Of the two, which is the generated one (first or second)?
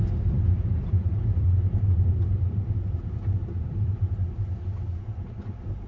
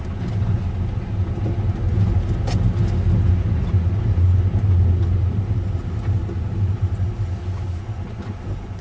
first